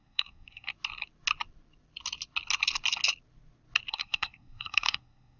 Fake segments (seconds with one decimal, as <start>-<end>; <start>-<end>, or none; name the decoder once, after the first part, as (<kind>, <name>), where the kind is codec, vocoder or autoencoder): 0.0-0.7 (codec, SNAC); 3.9-5.4